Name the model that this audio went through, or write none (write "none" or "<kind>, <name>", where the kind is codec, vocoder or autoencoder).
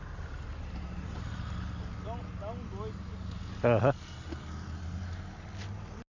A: none